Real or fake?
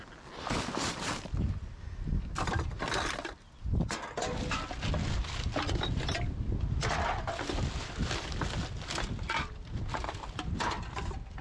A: real